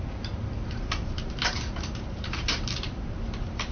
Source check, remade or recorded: remade